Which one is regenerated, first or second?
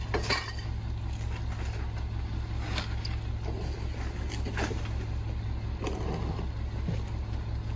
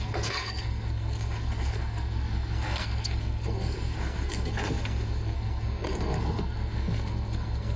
second